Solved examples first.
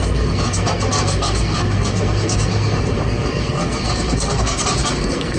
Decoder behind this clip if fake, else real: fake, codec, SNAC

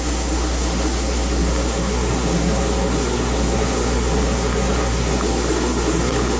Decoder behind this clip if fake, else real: fake, codec, SNAC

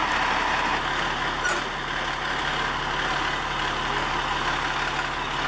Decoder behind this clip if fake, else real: real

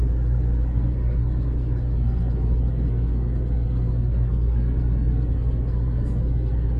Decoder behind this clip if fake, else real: fake, codec, SNAC